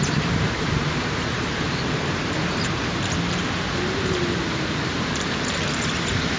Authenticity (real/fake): fake